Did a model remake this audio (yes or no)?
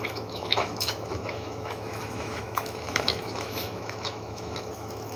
yes